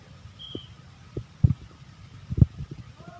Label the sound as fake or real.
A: real